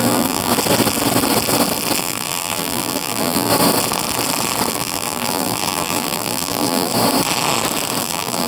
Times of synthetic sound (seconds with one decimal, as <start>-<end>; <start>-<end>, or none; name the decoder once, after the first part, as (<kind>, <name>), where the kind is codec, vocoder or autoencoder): 0.0-0.5 (vocoder, BigVGAN v2); 2.0-3.5; 4.7-6.9; 8.0-8.5